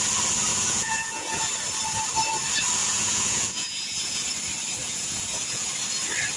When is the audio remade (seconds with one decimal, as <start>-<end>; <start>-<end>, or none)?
0.5-1.4; 2.8-4.3; 4.8-5.7